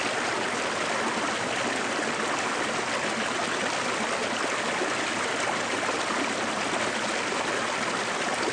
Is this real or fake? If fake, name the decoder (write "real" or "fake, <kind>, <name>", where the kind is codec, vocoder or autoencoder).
real